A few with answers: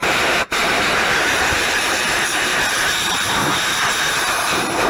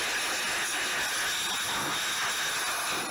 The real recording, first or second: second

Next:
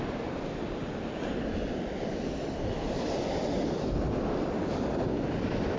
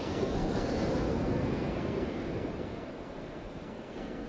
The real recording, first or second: first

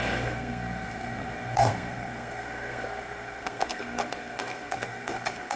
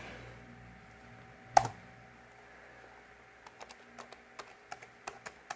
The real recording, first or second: second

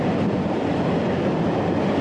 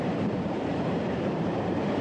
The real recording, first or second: first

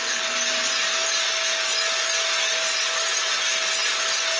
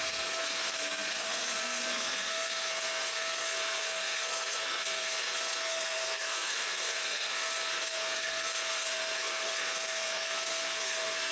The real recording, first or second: first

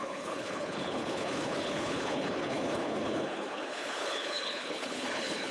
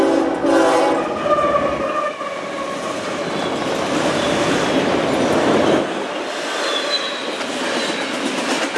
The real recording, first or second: second